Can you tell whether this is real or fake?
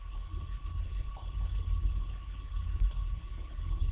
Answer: fake